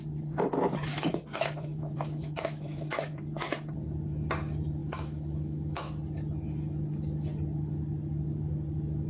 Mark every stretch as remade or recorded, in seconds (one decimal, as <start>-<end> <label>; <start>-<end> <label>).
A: 0.0-0.9 recorded; 0.9-3.1 remade; 3.1-4.8 recorded; 4.8-5.9 remade; 5.9-9.1 recorded